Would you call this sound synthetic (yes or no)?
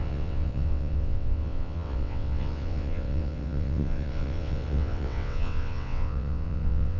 yes